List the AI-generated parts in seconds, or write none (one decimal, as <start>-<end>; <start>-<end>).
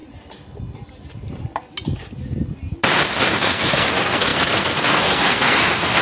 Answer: 3.2-6.0